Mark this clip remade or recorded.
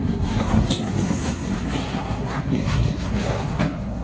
remade